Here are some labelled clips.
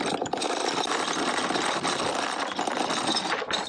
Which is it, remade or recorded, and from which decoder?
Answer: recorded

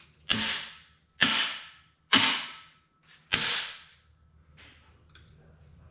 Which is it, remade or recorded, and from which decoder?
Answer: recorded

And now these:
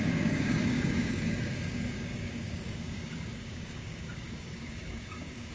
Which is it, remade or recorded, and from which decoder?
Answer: remade, codec, DAC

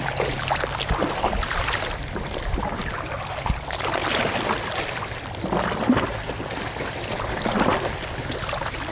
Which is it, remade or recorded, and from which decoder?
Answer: recorded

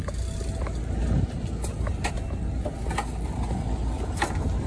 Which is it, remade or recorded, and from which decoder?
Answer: recorded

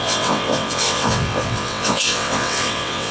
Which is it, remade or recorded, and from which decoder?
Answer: remade, vocoder, WaveNeXt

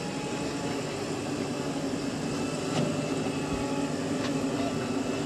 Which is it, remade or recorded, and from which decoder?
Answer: recorded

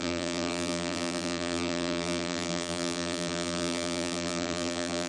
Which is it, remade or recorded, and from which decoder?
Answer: remade, vocoder, BigVGAN v2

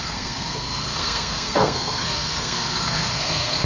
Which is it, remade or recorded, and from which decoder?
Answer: remade, codec, SNAC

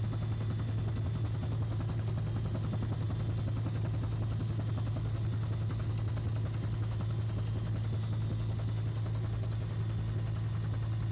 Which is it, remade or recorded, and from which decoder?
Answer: recorded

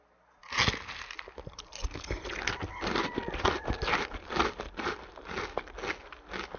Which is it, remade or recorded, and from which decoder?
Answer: recorded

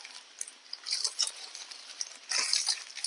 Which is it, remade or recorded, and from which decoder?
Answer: remade, vocoder, BigVGAN v2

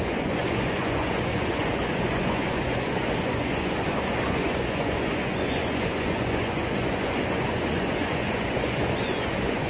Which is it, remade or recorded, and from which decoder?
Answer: remade, vocoder, Vocos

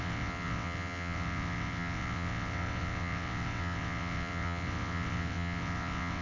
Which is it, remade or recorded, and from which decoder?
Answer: remade, vocoder, WaveNeXt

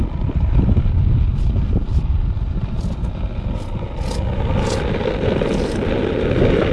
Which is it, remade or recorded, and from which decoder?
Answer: recorded